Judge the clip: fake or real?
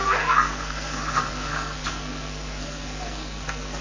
fake